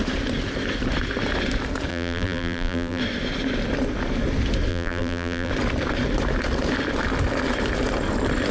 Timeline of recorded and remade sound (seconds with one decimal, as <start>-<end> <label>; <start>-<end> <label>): 0.0-1.9 recorded; 1.9-3.0 remade; 3.0-4.7 recorded; 4.7-5.5 remade; 5.5-8.5 recorded